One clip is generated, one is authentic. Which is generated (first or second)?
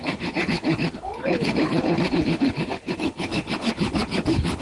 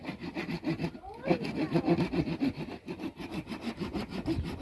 first